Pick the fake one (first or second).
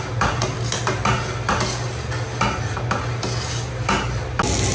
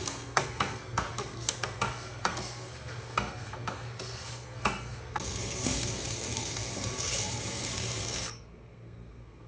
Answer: second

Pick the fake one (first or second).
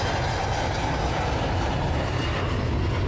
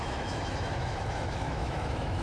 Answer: second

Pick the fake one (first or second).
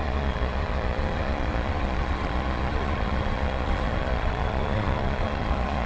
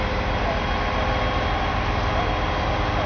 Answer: first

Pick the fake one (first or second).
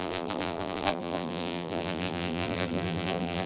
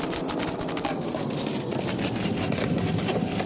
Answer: first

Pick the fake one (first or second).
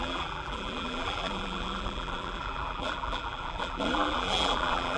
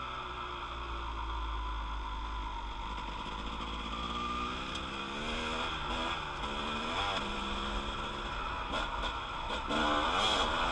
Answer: first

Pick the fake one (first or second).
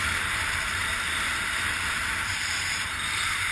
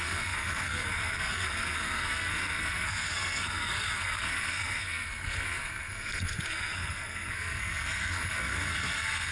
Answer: second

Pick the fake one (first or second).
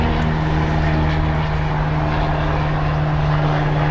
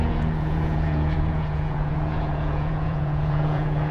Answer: second